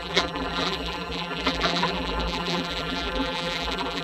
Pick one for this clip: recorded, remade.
remade